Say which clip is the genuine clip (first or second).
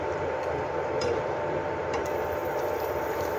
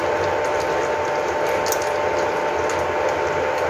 second